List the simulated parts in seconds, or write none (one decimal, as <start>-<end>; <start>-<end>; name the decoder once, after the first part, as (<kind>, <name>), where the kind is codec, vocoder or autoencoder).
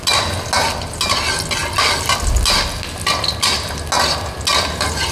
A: none